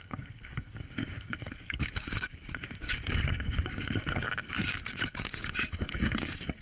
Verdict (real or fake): fake